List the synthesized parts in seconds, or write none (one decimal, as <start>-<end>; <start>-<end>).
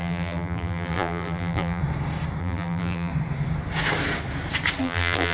0.0-1.8; 2.4-3.1; 4.8-5.3